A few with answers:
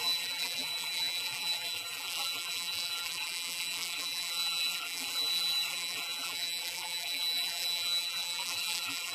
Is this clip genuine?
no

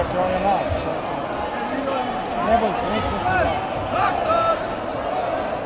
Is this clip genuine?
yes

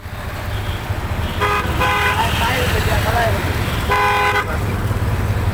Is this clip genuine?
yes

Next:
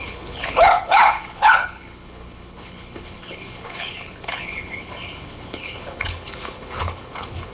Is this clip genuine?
no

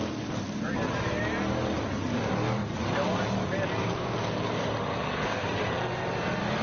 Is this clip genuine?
yes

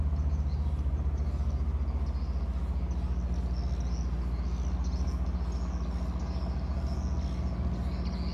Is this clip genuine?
yes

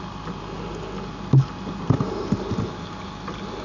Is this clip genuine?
yes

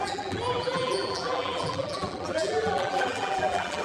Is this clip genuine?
no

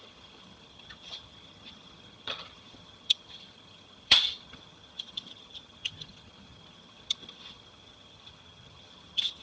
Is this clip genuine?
no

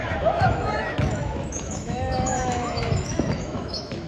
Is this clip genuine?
no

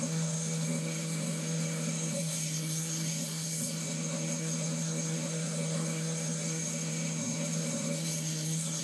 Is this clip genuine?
no